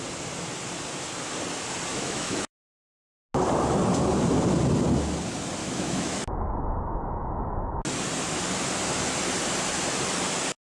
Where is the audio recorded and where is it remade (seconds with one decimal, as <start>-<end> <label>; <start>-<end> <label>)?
0.0-1.9 recorded; 1.9-2.5 remade; 2.5-5.6 recorded; 5.6-7.8 remade; 7.8-10.7 recorded